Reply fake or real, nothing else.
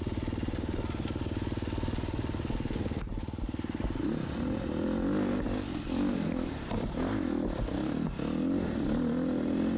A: real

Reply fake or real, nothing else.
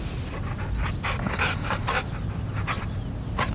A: real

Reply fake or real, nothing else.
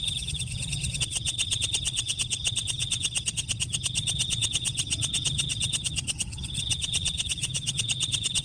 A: fake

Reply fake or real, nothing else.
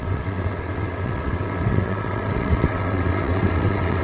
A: fake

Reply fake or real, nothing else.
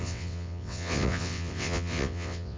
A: fake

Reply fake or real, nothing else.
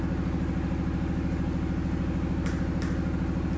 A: real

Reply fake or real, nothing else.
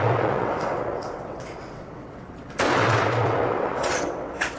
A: fake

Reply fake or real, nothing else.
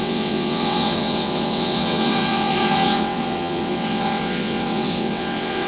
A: fake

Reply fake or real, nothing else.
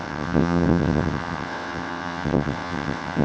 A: fake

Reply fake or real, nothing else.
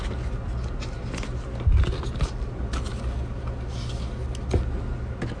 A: real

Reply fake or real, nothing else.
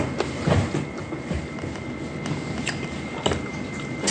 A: real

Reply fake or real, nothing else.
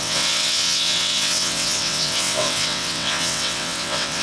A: fake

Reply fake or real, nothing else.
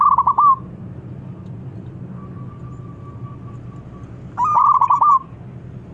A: real